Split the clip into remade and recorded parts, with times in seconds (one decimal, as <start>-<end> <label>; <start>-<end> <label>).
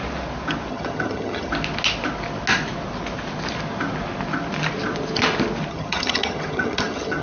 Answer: 0.0-0.7 recorded; 0.7-1.5 remade; 1.5-5.7 recorded; 5.7-7.2 remade